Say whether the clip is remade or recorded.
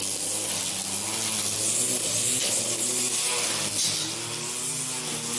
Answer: recorded